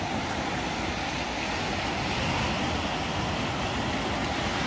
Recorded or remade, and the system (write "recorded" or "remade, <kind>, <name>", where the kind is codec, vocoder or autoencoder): recorded